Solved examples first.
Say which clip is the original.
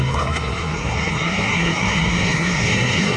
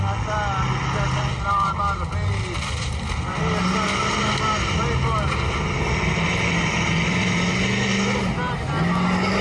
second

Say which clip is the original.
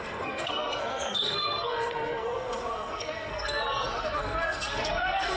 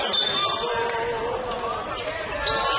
second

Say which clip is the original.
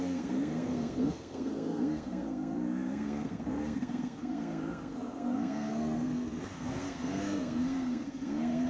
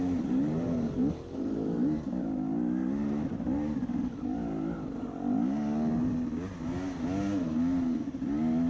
second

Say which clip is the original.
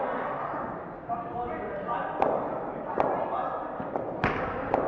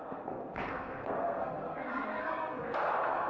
first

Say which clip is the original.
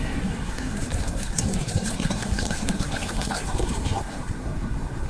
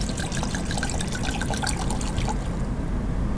second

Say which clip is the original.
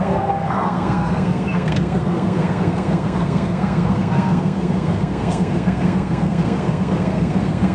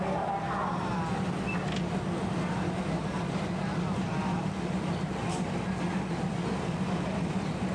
second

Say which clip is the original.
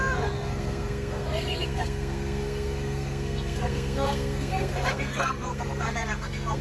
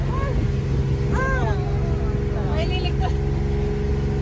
second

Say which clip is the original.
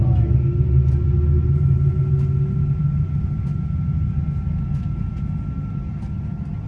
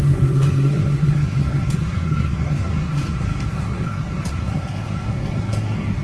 first